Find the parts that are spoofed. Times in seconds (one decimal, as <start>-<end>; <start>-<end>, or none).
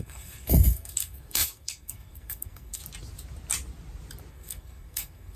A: 0.0-2.8; 4.3-5.4